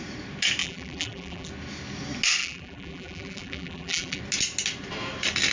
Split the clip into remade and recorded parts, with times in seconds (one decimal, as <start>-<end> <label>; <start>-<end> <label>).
0.0-0.6 recorded; 0.6-1.5 remade; 1.5-2.4 recorded; 2.4-4.2 remade; 4.2-5.5 recorded